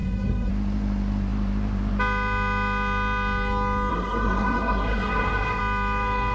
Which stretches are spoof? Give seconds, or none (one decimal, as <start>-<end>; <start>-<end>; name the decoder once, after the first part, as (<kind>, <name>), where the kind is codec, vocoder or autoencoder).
0.0-0.5 (codec, SNAC); 3.9-5.6